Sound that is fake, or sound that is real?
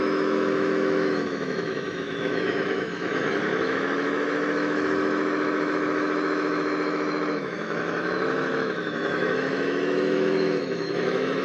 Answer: fake